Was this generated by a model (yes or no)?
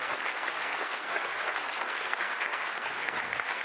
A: yes